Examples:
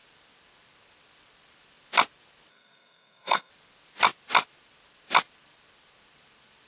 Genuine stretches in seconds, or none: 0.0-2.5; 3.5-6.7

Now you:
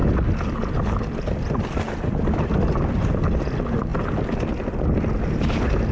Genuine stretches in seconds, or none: 0.0-5.9

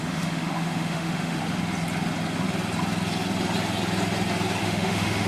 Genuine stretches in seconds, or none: 1.4-4.6

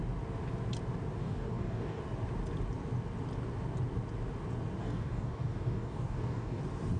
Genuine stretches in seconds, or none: 0.0-1.2; 2.0-4.8; 6.6-7.0

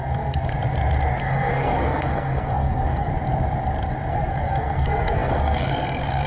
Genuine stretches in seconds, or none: 0.5-1.2; 3.1-4.1

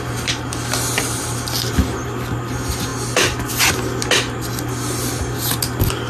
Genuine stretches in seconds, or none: 0.0-6.1

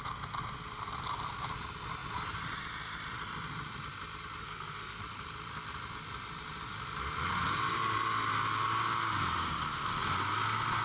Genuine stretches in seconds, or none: 0.0-4.4; 5.0-10.8